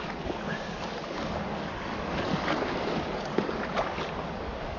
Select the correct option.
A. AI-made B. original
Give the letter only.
A